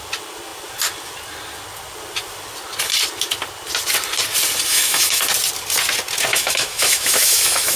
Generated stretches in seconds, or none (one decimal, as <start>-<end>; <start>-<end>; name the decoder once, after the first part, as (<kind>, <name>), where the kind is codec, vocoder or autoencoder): 4.7-5.2 (autoencoder, DAC-VAE); 6.3-7.8